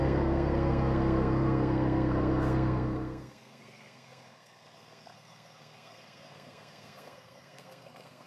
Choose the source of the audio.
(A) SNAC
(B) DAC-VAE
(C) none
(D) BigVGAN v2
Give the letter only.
A